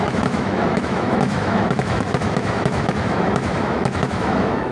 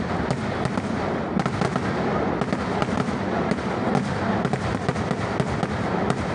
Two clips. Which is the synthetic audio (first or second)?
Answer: first